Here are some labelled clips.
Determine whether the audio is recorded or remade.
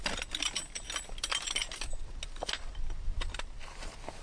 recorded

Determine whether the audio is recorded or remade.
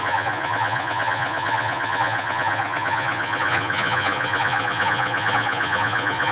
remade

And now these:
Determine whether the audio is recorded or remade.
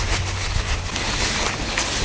recorded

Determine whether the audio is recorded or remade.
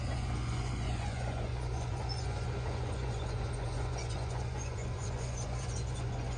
remade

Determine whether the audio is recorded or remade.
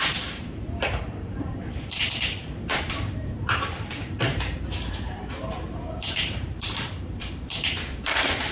remade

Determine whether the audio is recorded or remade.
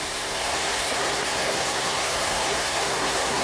remade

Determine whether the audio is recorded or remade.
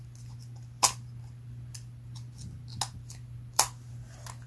recorded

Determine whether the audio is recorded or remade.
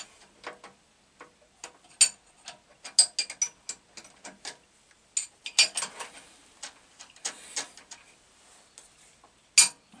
recorded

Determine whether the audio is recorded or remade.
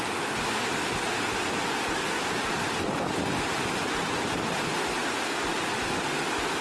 recorded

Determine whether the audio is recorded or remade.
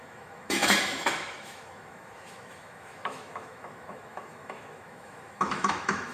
remade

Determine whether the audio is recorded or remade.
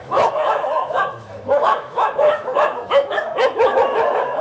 remade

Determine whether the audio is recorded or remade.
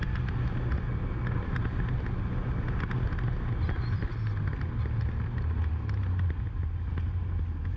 recorded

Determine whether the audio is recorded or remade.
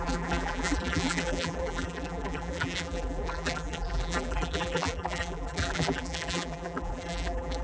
remade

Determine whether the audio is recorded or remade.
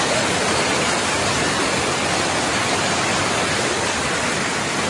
recorded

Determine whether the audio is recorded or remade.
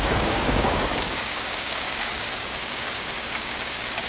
remade